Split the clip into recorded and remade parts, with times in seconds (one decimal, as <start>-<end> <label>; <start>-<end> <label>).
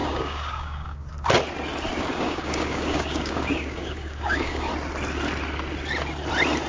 0.0-1.1 remade; 1.1-2.1 recorded; 2.1-4.7 remade; 4.7-6.7 recorded